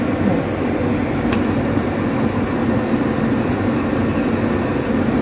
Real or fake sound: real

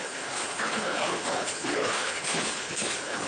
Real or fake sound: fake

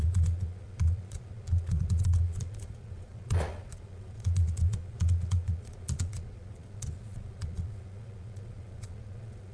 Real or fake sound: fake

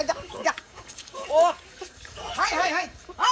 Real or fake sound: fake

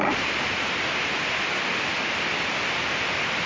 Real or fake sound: real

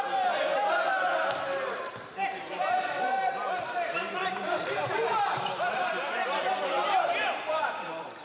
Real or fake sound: fake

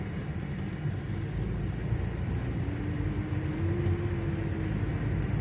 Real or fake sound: real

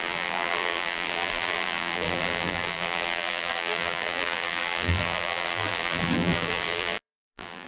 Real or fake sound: fake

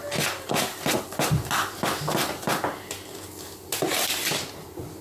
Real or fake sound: real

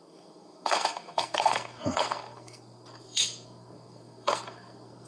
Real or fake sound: fake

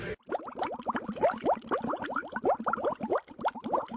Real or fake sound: real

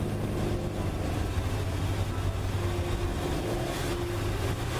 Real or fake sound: real